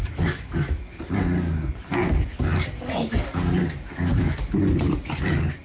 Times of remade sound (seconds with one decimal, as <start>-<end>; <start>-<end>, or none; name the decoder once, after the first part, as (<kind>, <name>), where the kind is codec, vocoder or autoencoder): 0.0-1.0 (autoencoder, DAC-VAE); 4.1-4.6